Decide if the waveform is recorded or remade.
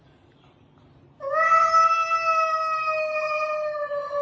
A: recorded